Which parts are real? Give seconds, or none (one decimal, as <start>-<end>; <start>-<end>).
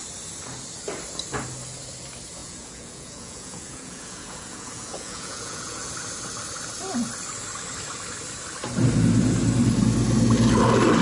0.0-2.4; 5.9-11.0